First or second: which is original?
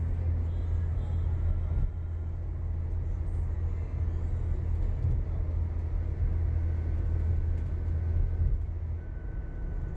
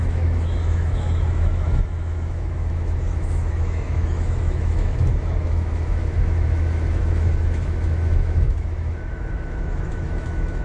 first